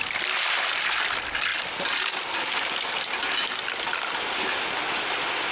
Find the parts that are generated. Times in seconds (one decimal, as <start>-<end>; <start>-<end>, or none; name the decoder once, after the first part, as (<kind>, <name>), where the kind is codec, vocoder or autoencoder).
none